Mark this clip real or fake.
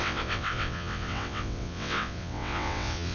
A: fake